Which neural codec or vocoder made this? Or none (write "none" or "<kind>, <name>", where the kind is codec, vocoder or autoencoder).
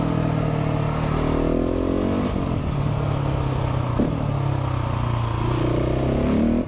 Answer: none